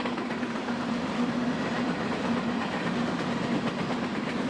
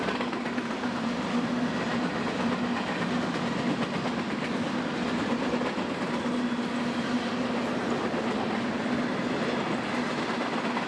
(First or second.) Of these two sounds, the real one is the second